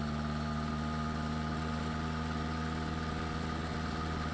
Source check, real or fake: real